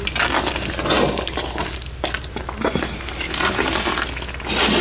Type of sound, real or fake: real